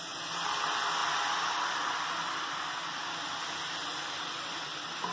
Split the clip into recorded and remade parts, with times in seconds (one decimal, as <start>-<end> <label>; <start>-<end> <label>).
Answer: 0.0-5.1 recorded